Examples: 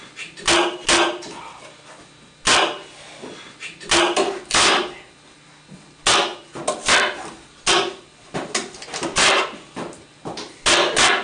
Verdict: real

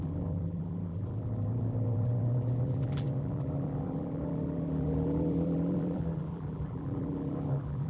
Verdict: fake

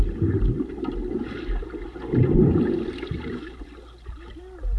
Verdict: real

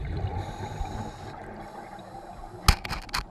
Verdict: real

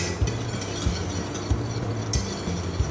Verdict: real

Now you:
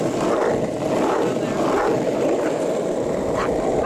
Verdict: real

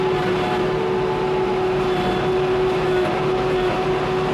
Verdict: real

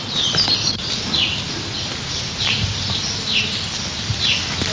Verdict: real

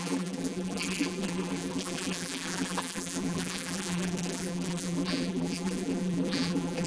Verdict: fake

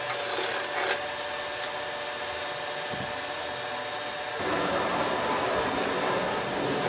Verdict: real